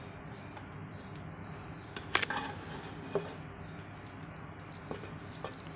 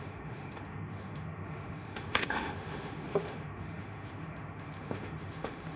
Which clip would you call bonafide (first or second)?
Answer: first